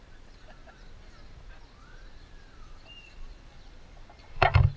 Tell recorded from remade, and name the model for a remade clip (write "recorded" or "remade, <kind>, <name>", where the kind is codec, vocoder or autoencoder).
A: recorded